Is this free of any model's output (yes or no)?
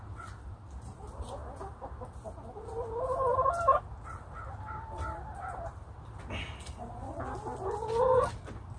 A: yes